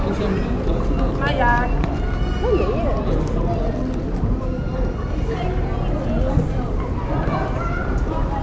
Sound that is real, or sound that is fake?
real